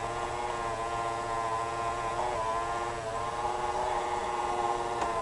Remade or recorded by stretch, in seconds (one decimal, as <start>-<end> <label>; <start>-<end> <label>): 0.0-3.1 recorded; 3.1-5.2 remade